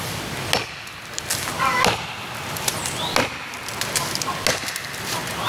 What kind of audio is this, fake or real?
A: real